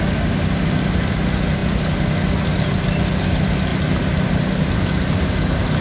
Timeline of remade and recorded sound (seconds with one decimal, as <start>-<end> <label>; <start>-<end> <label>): 0.0-5.8 recorded